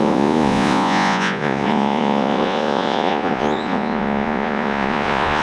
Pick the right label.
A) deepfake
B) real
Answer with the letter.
A